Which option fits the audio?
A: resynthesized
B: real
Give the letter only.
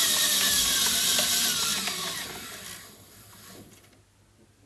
B